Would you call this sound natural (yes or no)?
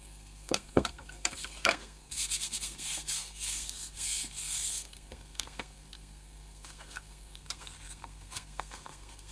no